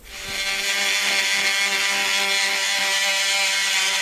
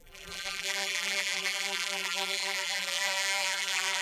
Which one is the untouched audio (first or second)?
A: first